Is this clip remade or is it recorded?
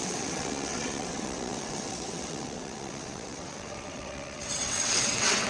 remade